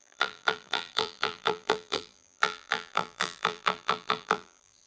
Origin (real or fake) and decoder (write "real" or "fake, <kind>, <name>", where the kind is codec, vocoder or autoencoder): fake, vocoder, BigVGAN v2